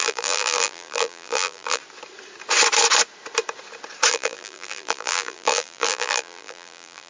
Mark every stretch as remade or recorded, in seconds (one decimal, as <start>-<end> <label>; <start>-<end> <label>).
0.0-1.8 remade; 1.8-4.1 recorded; 4.1-7.1 remade